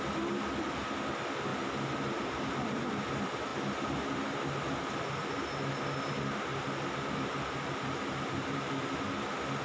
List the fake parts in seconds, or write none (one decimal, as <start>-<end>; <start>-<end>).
1.5-2.8; 6.5-8.7

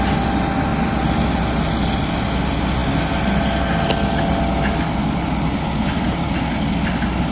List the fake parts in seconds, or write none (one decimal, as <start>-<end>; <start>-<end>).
none

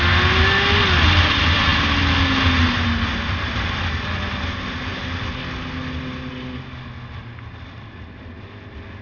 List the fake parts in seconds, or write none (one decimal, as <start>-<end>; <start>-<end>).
none

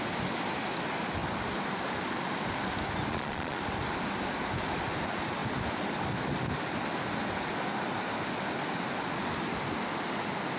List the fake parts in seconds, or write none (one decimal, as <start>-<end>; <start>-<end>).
3.1-3.6

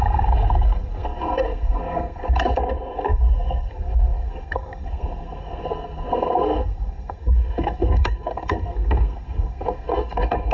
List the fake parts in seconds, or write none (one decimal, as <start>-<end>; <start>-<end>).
0.0-10.5